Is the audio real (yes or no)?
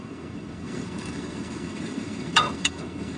no